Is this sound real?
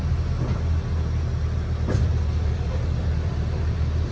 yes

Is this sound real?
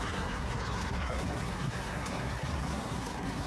no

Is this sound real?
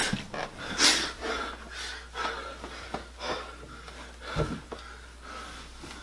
yes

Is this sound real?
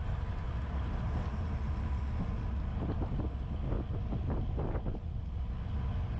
yes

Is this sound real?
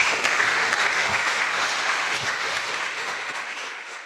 no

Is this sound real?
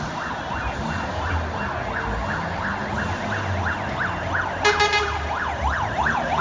yes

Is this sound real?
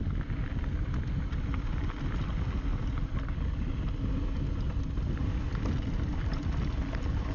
yes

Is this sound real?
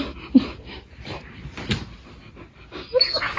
yes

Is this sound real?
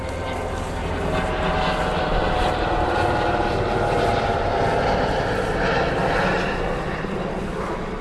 yes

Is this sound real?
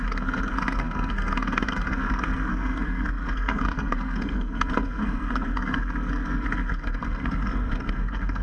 no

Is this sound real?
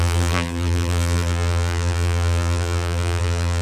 no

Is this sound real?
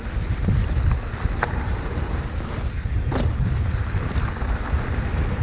yes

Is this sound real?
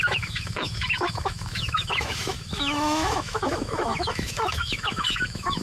no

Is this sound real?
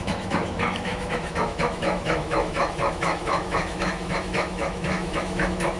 no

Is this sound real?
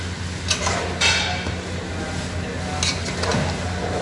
yes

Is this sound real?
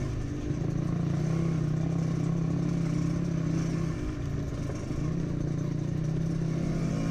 yes